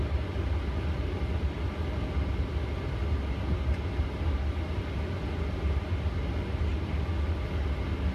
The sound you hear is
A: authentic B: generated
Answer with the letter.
A